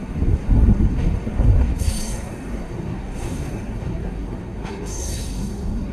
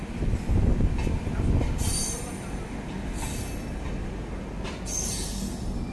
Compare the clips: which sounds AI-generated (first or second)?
first